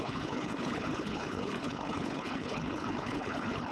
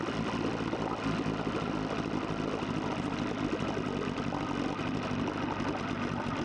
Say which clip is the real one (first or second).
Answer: second